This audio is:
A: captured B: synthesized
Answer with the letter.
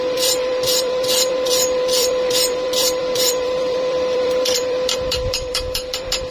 B